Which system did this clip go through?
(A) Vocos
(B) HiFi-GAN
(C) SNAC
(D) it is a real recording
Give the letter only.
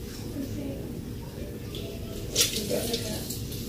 D